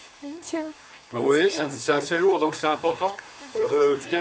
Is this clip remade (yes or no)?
yes